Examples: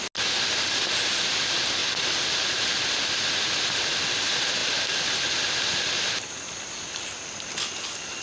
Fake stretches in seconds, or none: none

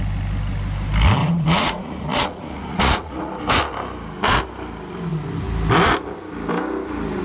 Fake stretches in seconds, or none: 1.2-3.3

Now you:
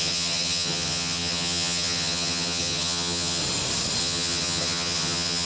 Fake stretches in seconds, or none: 0.0-3.4; 4.0-5.5

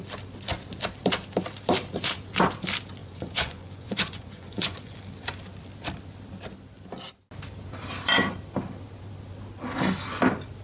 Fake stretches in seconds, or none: 3.0-5.0

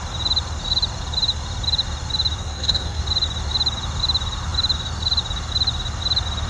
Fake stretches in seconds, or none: 2.4-3.0

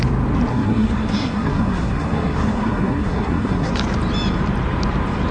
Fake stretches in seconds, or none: 0.5-3.7